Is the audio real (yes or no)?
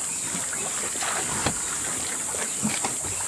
yes